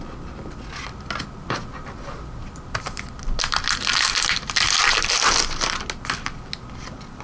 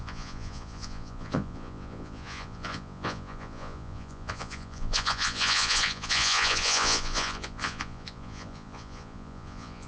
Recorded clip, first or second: first